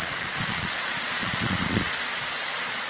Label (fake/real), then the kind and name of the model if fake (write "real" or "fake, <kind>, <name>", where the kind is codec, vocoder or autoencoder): fake, vocoder, Vocos